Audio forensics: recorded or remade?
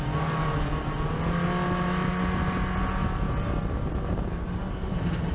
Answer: recorded